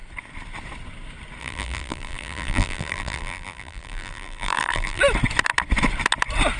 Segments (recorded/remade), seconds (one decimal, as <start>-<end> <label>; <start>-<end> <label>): 0.0-1.4 recorded; 1.4-5.0 remade; 5.0-6.6 recorded